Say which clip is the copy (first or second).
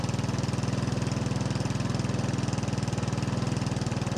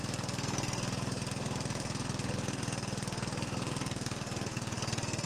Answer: second